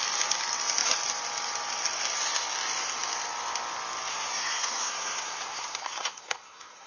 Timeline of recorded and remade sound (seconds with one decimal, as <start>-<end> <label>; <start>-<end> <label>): 0.0-4.1 recorded; 4.1-6.9 remade